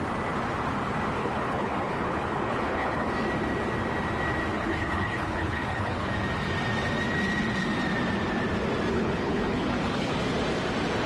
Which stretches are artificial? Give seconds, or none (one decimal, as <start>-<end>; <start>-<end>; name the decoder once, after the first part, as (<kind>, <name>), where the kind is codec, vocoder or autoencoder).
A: 1.2-3.1 (codec, HILCodec); 4.5-6.1; 8.9-10.1